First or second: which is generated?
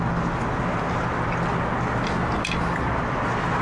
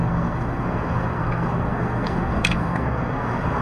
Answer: second